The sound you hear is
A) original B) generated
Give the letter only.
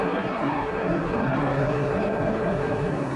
B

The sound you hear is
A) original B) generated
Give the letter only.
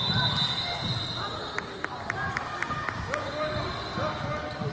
A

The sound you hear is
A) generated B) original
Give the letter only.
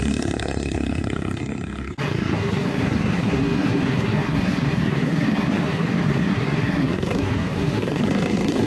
A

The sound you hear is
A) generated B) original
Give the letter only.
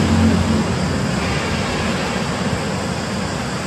B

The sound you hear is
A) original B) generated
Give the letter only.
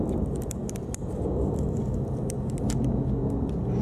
A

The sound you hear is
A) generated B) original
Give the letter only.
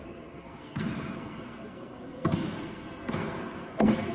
A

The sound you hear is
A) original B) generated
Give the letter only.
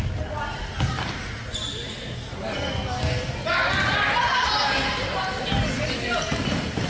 A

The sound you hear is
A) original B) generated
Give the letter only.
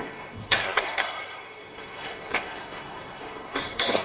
B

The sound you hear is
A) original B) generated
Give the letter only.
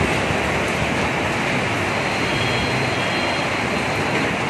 A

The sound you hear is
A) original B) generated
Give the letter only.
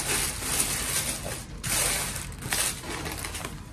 A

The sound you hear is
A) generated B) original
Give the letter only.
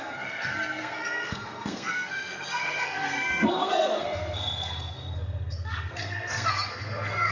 A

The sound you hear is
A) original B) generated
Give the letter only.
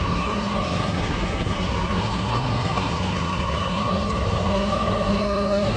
B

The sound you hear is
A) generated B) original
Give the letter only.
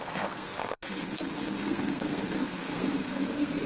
A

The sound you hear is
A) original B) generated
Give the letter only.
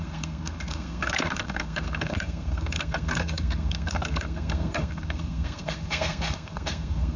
B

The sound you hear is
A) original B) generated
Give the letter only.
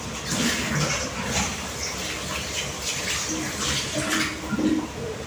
A